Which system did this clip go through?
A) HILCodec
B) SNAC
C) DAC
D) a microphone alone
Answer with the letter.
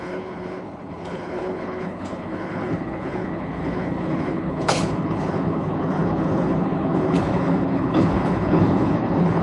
A